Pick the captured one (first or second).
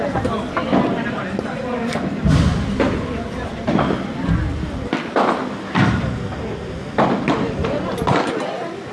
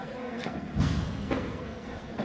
first